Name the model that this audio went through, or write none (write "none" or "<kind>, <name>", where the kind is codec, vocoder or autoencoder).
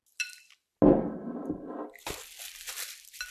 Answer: none